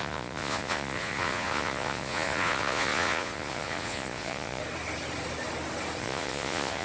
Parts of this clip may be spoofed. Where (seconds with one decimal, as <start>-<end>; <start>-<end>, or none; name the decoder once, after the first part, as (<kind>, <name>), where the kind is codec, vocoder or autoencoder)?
0.0-4.6 (vocoder, Vocos); 6.0-6.8